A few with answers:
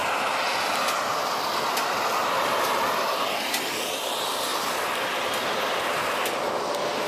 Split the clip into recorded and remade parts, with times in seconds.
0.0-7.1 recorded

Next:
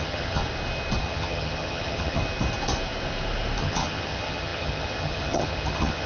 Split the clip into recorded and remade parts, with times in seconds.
0.0-0.4 remade; 0.4-1.0 recorded; 1.0-2.2 remade; 2.2-3.6 recorded; 3.6-6.1 remade

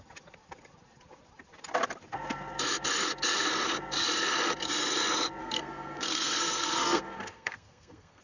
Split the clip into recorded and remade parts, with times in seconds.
0.0-5.4 recorded; 5.4-8.2 remade

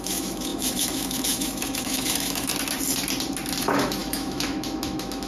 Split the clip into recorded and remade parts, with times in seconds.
0.0-2.5 remade; 2.5-3.6 recorded; 3.6-5.3 remade